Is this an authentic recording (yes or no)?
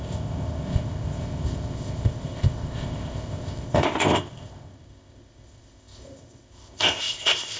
no